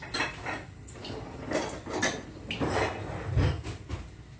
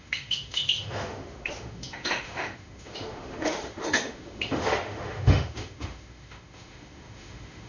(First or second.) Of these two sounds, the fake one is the second